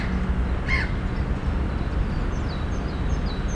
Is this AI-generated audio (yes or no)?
no